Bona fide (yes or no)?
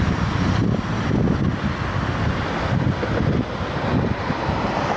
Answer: yes